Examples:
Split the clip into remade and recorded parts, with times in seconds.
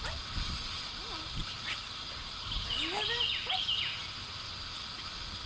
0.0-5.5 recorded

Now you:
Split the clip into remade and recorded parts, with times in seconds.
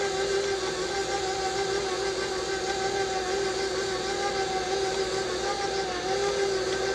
0.0-6.9 recorded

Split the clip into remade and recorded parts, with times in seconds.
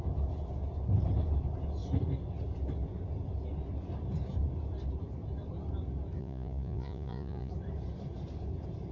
0.0-6.2 recorded; 6.2-7.5 remade; 7.5-8.9 recorded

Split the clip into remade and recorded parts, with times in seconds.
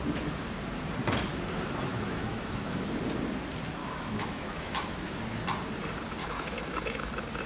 0.0-1.9 recorded; 1.9-2.8 remade; 2.8-3.8 recorded; 3.8-5.2 remade; 5.2-6.2 recorded; 6.2-7.1 remade; 7.1-7.5 recorded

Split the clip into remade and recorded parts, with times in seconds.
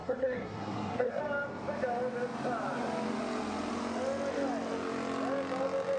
0.0-1.2 remade; 1.2-6.0 recorded